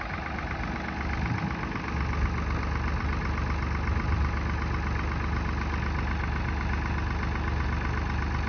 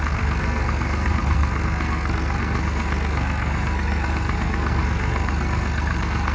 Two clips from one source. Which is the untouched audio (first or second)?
first